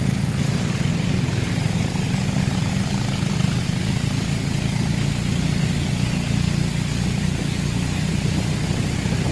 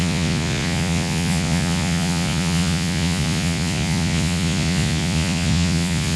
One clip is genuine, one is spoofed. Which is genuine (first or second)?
first